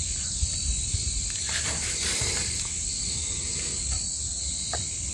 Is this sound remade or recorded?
recorded